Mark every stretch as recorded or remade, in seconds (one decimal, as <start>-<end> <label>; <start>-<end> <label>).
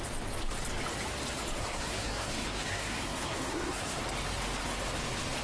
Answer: 0.0-1.6 recorded; 1.6-4.0 remade; 4.0-5.4 recorded